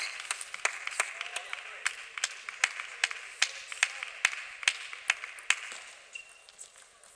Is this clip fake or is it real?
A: real